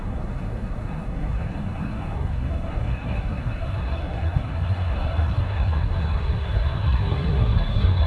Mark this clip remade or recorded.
remade